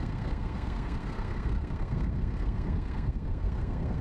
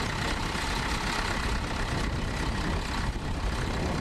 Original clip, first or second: second